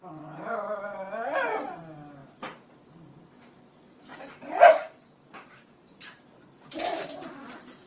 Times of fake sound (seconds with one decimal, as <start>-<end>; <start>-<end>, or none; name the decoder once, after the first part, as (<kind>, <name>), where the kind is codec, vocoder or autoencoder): 2.2-2.8 (vocoder, BigVGAN v2); 4.1-7.5